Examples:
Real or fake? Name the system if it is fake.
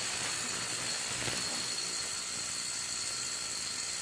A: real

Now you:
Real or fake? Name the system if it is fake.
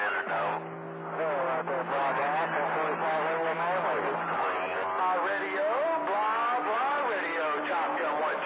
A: real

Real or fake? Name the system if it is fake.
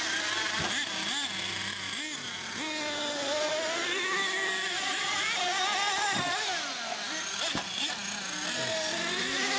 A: real